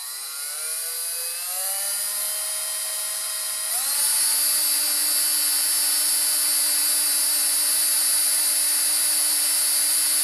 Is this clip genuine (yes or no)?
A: yes